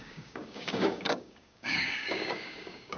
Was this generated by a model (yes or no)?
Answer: yes